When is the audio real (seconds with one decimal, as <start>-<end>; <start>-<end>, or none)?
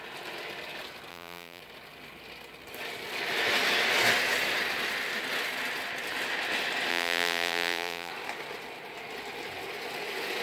0.0-1.1; 1.6-6.9; 8.1-10.4